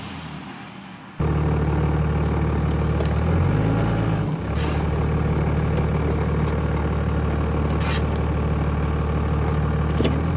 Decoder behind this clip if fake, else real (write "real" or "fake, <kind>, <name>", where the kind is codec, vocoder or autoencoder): real